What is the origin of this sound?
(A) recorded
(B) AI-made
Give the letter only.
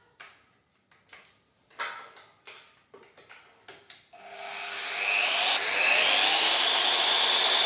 A